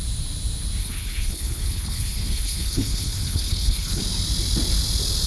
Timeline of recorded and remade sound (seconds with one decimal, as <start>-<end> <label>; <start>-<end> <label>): 0.0-0.8 recorded; 0.8-4.0 remade; 4.0-5.3 recorded